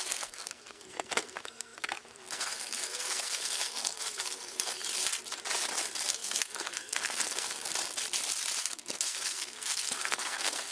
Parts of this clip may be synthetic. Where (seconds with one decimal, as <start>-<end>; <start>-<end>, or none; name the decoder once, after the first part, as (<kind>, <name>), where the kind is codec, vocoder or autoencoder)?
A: 0.0-4.8 (codec, SNAC); 6.1-7.7; 8.6-10.7